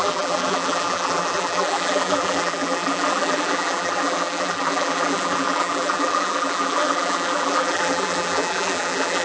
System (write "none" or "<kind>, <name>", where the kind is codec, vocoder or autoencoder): vocoder, BigVGAN v2